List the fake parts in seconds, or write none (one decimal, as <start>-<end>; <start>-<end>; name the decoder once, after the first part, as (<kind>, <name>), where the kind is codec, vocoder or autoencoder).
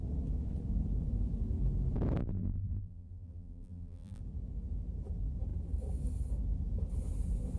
2.2-4.2 (vocoder, BigVGAN v2)